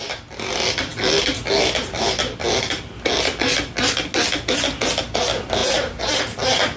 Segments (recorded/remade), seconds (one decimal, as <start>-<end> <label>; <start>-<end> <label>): 0.0-5.6 recorded; 5.6-6.2 remade; 6.2-6.8 recorded